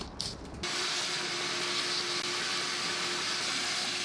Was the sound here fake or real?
real